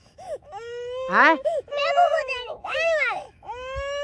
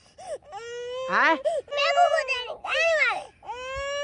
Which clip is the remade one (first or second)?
first